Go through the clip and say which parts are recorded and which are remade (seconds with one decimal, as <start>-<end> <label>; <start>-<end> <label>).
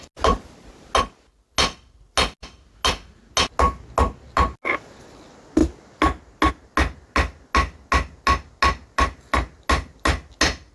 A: 0.0-10.7 recorded